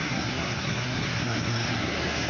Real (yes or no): no